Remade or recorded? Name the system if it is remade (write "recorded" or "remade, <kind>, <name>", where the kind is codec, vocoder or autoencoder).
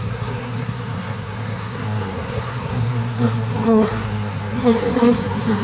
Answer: remade, codec, SNAC